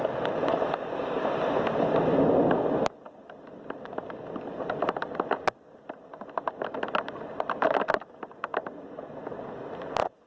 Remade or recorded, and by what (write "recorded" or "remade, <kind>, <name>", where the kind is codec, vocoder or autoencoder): recorded